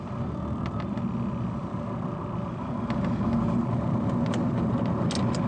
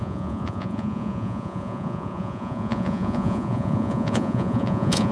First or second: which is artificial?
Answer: second